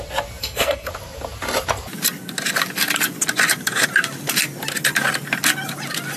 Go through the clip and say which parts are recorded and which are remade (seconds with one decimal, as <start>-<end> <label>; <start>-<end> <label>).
0.0-0.4 recorded; 0.4-0.9 remade; 0.9-6.2 recorded